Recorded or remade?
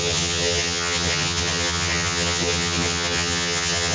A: remade